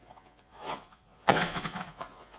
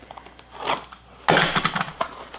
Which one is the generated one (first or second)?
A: first